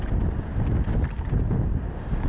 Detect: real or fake real